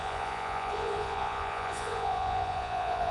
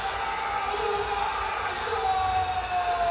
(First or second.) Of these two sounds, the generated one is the first